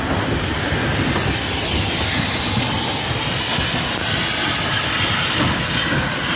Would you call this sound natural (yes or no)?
yes